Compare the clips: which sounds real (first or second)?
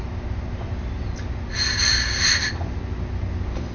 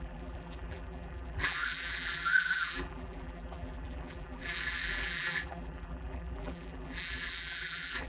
first